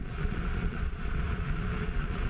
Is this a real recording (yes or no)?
no